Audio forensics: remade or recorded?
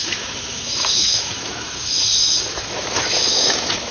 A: remade